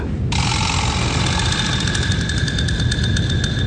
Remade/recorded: recorded